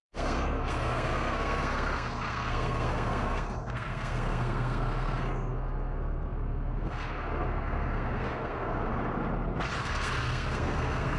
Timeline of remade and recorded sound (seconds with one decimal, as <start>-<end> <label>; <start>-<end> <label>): 0.0-8.9 remade; 8.9-9.8 recorded; 9.8-11.2 remade